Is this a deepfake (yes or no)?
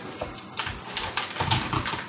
no